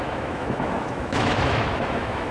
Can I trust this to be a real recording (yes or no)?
no